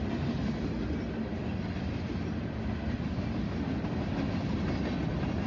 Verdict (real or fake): real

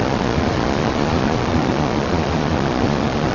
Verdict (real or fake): fake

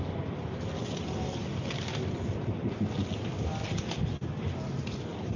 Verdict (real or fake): real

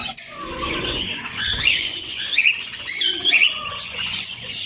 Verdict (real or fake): fake